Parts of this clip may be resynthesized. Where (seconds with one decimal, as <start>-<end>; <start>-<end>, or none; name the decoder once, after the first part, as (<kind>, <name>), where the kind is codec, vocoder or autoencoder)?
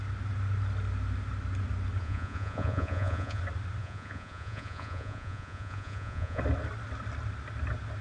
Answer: 2.0-3.4 (vocoder, Vocos); 3.8-6.4